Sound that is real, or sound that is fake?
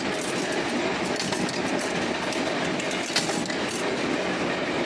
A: real